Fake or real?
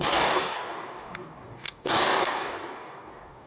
fake